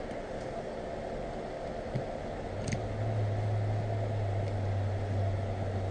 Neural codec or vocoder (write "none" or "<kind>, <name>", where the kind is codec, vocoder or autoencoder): none